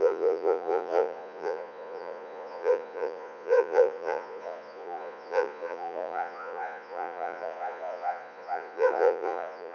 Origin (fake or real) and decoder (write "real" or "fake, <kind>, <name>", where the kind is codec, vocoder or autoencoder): fake, vocoder, Vocos